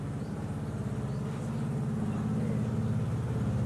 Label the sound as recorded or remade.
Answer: recorded